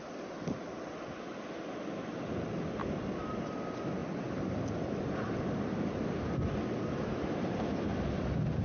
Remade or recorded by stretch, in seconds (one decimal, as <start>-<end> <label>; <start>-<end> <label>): 0.0-8.6 recorded